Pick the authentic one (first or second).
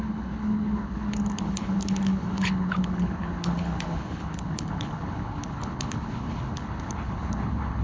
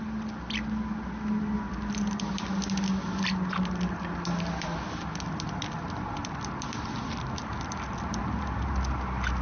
second